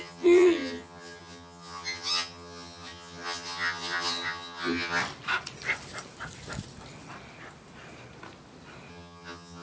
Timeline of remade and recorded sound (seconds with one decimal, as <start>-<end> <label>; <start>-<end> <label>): 0.0-5.0 remade; 5.0-8.9 recorded; 8.9-9.6 remade